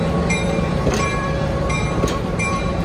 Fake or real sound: fake